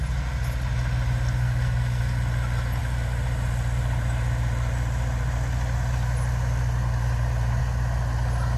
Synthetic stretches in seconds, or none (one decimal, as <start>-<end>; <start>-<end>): 1.4-2.0